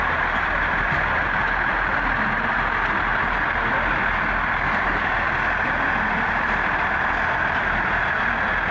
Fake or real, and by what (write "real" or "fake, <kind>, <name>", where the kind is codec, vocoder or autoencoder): real